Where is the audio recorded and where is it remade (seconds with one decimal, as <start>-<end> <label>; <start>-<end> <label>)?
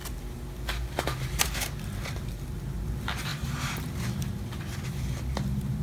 0.0-5.8 recorded